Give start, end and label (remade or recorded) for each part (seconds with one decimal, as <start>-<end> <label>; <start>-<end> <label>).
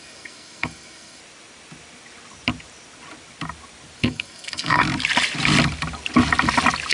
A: 0.0-1.2 remade; 1.2-4.0 recorded; 4.0-4.8 remade; 4.8-6.9 recorded